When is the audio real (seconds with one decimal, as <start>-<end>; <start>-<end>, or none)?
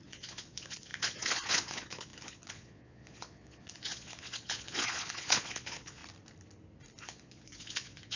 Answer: 6.0-7.0